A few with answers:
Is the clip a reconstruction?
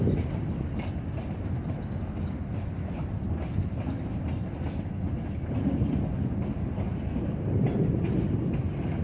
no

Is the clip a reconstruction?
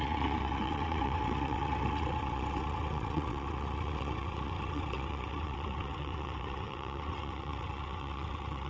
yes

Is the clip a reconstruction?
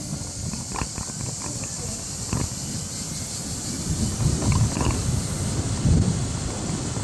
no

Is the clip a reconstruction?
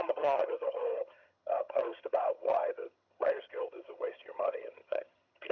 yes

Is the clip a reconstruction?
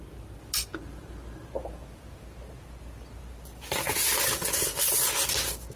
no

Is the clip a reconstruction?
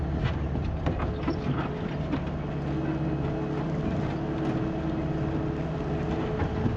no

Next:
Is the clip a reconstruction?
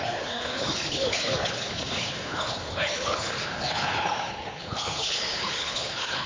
yes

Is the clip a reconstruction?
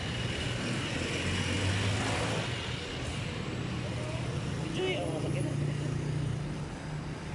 no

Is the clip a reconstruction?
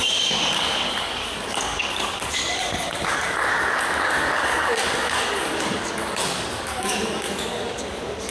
yes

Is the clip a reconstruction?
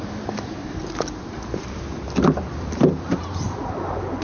yes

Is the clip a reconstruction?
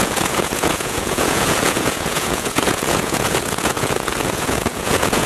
yes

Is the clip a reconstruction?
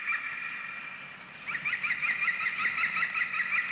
no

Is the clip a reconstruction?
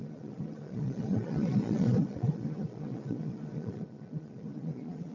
yes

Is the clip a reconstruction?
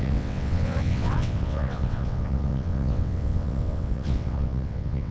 yes